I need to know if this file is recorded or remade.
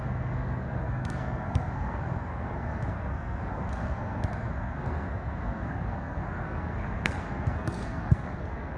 remade